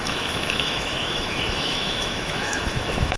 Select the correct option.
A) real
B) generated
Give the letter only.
B